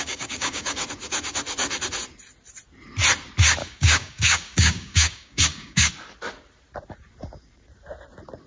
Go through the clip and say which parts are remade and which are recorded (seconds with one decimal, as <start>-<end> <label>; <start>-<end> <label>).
0.0-0.8 remade; 0.8-3.6 recorded; 3.6-5.9 remade; 5.9-8.5 recorded